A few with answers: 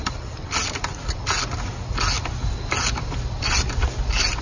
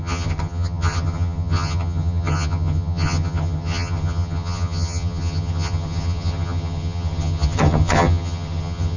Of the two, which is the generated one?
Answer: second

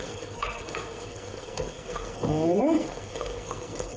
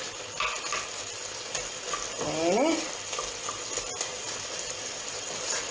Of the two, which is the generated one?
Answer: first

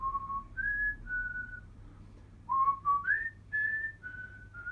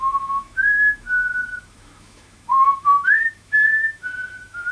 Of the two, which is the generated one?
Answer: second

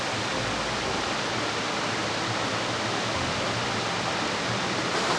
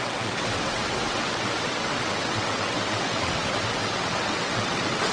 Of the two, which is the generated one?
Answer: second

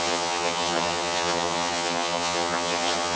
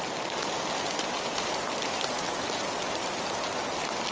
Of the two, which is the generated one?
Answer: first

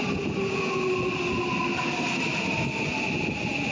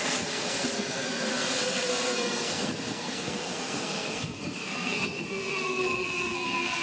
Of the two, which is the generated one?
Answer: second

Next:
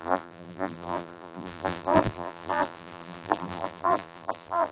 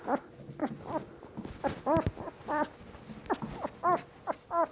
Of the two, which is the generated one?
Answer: first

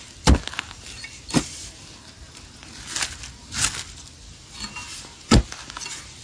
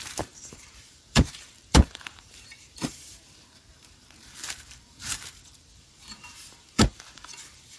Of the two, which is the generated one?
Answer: second